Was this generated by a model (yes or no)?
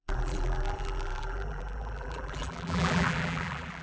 yes